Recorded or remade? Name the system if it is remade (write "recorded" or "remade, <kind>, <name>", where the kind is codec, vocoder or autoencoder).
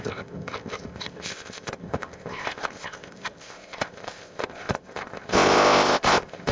remade, codec, ZipCodec